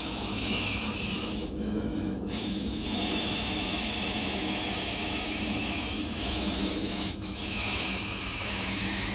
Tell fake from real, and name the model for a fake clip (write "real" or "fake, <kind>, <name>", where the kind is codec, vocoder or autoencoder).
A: fake, autoencoder, DAC-VAE